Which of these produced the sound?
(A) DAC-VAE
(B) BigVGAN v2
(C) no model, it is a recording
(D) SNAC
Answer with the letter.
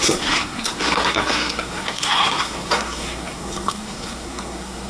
D